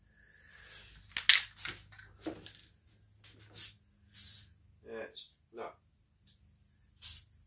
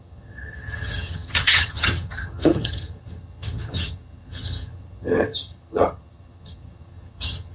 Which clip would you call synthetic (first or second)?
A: second